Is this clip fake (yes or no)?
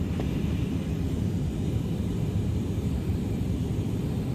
yes